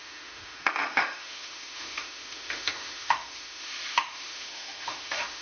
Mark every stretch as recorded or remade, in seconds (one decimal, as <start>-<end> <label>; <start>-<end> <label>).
0.0-5.4 remade